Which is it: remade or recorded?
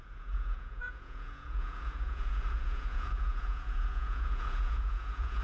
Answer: remade